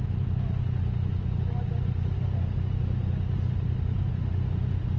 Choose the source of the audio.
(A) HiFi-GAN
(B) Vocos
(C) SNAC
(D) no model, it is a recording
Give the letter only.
D